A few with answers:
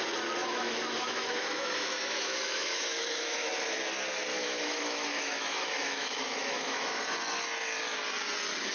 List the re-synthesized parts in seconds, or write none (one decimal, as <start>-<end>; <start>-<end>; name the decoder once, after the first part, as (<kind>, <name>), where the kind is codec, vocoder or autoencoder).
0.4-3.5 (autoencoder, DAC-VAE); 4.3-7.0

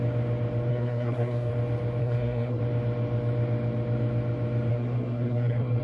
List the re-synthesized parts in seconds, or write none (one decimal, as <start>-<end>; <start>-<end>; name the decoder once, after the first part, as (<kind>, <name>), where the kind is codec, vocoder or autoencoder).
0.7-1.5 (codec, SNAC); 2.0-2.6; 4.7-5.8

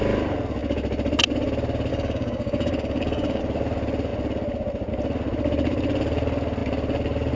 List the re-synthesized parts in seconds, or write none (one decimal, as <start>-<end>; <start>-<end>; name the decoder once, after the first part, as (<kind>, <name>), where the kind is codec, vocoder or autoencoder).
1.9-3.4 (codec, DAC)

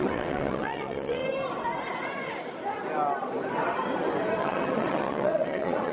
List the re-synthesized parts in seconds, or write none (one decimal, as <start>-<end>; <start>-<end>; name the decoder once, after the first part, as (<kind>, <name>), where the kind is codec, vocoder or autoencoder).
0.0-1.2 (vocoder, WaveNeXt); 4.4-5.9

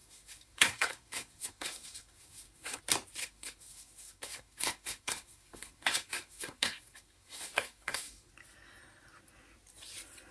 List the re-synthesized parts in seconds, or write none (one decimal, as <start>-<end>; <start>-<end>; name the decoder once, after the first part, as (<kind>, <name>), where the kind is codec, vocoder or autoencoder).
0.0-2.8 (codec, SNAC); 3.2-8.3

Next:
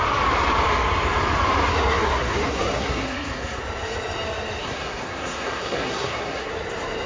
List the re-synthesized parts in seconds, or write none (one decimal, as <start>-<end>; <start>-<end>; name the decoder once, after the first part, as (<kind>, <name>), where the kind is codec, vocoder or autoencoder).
1.7-3.6 (codec, SNAC); 4.6-6.5

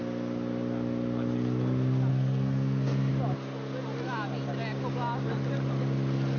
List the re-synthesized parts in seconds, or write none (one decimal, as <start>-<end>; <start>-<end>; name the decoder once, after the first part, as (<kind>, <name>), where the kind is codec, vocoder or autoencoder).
2.1-3.1 (codec, SNAC)